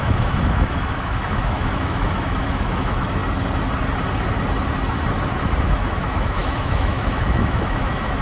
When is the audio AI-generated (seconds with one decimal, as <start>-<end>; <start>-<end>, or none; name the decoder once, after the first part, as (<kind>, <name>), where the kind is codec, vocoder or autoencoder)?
0.0-3.2 (autoencoder, DAC-VAE); 5.6-8.2